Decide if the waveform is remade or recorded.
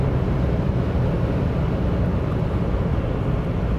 recorded